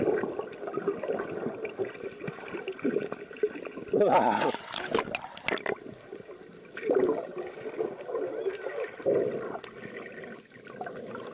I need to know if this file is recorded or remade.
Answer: recorded